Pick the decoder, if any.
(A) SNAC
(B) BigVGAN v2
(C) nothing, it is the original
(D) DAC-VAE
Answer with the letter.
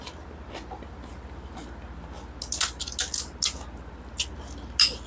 C